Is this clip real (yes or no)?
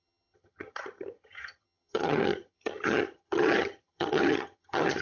no